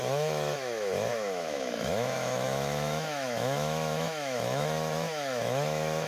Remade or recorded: remade